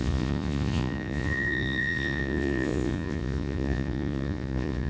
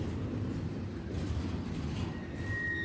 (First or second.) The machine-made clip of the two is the first